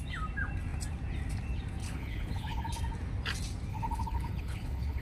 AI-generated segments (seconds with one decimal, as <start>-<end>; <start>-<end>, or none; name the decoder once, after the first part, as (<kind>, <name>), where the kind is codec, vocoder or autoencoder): 1.8-2.7 (codec, HILCodec); 3.7-5.0